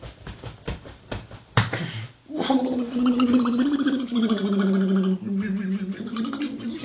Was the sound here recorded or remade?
remade